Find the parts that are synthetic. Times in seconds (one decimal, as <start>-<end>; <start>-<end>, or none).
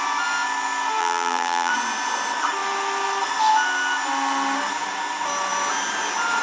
1.0-1.7